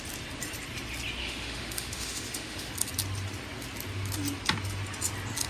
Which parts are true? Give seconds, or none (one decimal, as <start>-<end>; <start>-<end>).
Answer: 0.0-1.2; 2.7-5.5